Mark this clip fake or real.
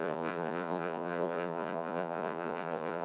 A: fake